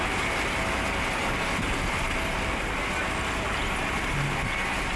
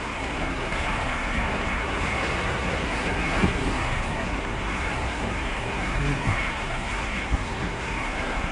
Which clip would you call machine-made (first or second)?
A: second